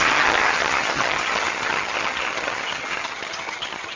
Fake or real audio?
fake